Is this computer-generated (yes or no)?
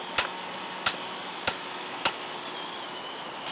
no